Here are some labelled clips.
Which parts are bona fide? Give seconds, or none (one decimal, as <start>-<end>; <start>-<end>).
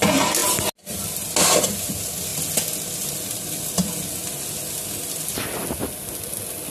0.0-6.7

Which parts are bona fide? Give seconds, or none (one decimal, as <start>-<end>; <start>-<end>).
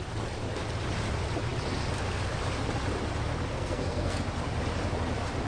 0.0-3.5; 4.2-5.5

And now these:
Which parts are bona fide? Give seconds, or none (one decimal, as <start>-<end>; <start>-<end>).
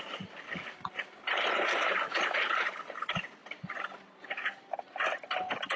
0.0-5.8